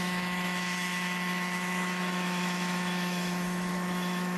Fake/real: fake